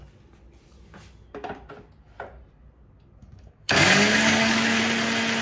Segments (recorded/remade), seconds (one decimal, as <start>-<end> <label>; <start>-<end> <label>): 0.0-3.2 recorded; 3.2-4.8 remade; 4.8-5.4 recorded